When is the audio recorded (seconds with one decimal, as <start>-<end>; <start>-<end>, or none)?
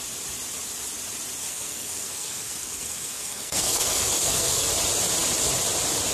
0.0-1.4; 4.7-6.1